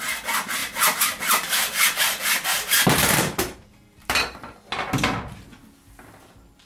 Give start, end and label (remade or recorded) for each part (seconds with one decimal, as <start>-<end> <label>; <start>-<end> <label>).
0.0-0.6 recorded; 0.6-4.4 remade; 4.4-6.7 recorded

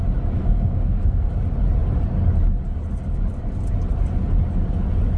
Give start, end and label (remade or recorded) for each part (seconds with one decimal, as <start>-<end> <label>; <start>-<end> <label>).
0.0-0.4 recorded; 0.4-1.3 remade; 1.3-5.2 recorded